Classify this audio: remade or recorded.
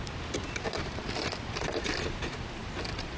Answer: recorded